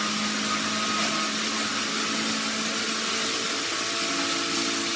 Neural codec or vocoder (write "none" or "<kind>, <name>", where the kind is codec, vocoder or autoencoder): none